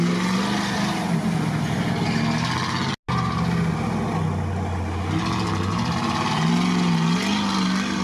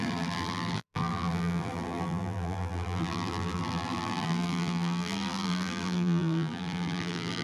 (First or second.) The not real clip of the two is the second